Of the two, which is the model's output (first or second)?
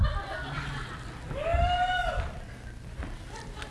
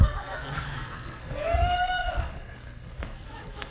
second